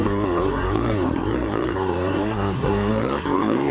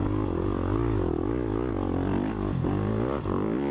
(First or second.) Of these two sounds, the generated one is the first